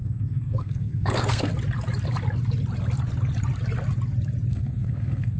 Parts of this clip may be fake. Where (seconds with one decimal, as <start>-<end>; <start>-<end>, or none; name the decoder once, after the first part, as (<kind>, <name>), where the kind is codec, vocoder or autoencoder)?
0.0-1.5 (codec, SNAC); 4.5-5.4

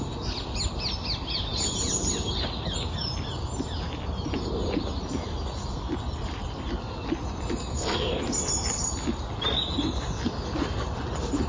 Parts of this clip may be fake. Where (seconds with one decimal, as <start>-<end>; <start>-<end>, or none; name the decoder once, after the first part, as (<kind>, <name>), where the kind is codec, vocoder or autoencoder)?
7.7-8.2 (codec, SNAC)

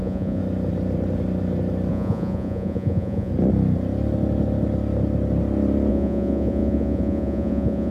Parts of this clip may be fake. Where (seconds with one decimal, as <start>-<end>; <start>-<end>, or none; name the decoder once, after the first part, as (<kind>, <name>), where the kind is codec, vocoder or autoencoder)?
0.0-0.4 (vocoder, Vocos); 1.9-3.3; 5.9-7.9

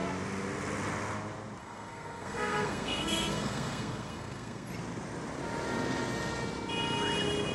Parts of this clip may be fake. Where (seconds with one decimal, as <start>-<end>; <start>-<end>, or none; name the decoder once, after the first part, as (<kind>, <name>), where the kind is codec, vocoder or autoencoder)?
1.6-4.7 (codec, SNAC)